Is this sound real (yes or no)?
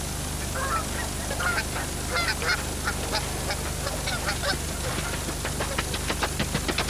yes